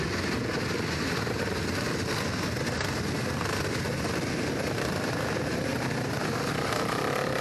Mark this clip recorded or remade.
recorded